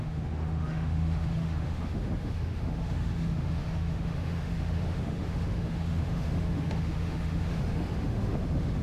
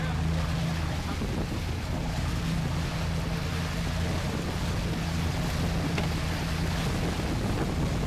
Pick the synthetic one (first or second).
first